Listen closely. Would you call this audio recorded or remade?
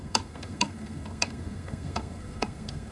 remade